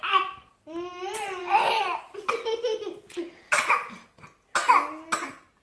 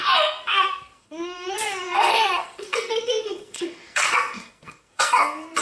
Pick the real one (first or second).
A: first